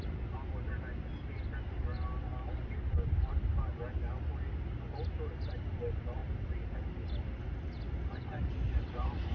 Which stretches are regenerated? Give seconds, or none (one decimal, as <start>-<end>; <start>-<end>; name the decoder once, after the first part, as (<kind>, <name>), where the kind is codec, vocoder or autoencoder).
6.2-7.1 (vocoder, BigVGAN v2); 8.1-9.3